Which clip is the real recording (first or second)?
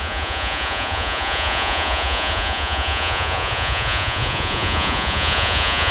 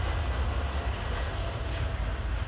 second